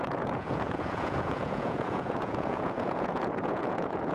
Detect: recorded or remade remade